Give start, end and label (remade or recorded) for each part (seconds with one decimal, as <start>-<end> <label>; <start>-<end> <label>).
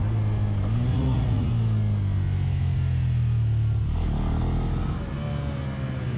0.0-0.9 recorded; 0.9-1.5 remade; 1.5-6.2 recorded